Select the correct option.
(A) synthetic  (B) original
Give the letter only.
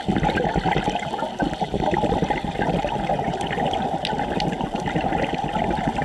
B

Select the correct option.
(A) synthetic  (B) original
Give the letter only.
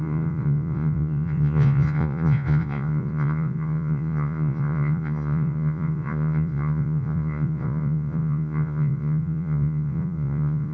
A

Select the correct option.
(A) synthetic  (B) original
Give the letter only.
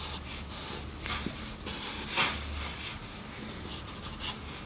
B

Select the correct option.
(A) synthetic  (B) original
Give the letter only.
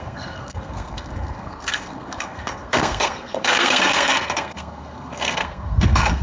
A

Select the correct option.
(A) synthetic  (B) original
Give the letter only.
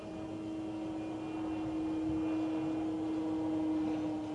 B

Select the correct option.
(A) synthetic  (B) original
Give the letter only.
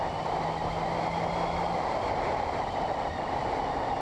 B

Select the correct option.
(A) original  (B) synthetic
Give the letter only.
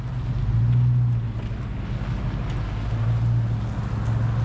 A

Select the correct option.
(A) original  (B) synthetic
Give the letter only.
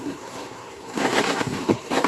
B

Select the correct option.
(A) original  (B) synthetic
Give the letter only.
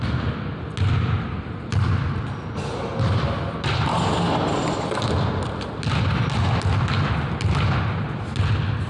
A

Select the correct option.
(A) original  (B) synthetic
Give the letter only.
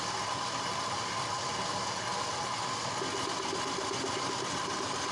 A